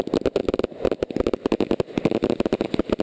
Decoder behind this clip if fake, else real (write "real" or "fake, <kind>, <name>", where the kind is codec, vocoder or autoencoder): real